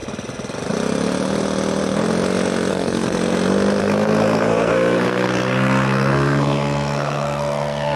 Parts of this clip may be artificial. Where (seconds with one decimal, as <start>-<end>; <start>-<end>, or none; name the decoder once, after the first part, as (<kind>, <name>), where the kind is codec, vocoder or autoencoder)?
2.7-3.2 (codec, SNAC); 3.8-8.0